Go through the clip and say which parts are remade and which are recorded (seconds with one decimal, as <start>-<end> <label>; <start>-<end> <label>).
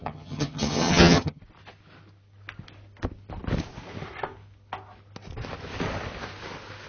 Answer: 0.0-1.4 remade; 1.4-6.9 recorded